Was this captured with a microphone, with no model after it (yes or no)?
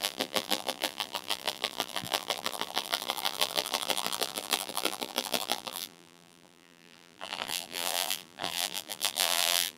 no